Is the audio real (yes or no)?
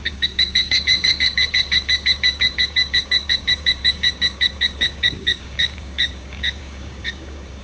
no